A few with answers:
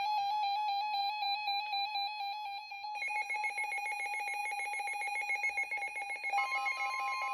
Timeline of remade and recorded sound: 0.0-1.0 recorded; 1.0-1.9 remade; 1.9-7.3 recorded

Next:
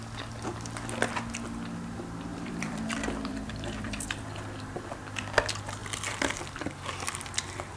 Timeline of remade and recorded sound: 0.0-2.3 recorded; 2.3-4.7 remade; 4.7-7.8 recorded